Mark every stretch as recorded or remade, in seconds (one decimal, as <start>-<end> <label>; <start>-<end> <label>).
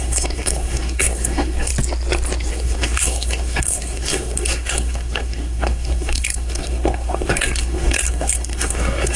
0.0-1.7 remade; 1.7-2.5 recorded; 2.5-9.2 remade